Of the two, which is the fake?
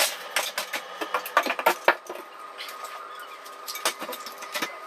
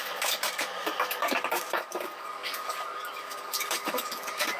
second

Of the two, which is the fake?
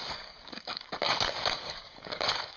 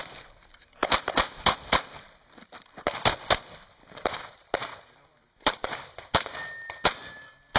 first